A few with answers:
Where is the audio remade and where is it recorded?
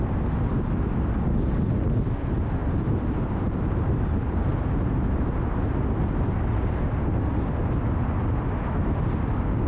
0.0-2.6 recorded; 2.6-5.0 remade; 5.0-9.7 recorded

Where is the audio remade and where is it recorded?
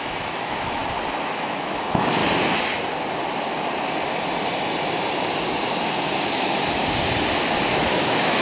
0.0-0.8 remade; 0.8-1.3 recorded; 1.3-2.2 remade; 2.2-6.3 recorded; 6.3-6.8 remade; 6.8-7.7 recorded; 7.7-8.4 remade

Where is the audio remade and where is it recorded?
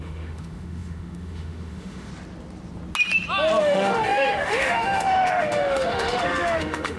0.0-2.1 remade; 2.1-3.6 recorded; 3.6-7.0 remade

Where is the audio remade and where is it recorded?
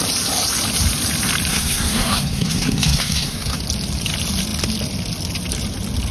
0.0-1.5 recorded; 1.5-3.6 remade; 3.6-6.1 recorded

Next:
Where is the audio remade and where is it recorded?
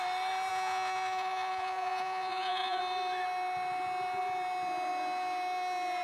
0.0-0.5 recorded; 0.5-2.8 remade; 2.8-6.0 recorded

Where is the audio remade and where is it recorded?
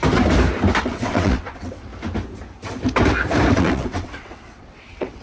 0.0-0.8 recorded; 0.8-1.9 remade; 1.9-3.5 recorded; 3.5-5.2 remade